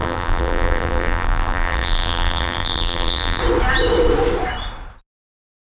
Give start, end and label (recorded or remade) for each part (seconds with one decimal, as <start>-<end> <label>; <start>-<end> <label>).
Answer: 0.0-3.4 remade; 3.4-5.6 recorded